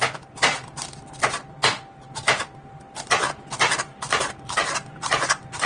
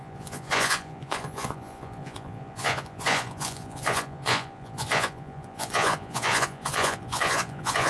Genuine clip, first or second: first